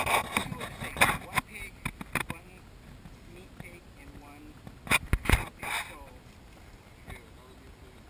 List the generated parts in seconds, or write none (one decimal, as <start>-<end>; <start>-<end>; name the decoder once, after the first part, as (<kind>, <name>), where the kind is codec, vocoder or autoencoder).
none